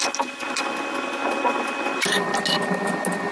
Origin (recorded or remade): recorded